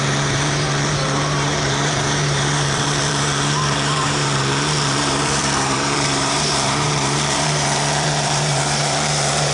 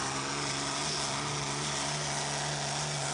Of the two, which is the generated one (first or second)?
first